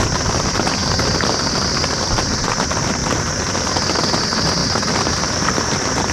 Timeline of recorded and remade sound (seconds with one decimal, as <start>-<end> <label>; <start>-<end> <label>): 0.0-6.1 recorded